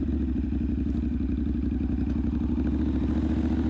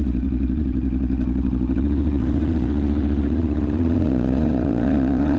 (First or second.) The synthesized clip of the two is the second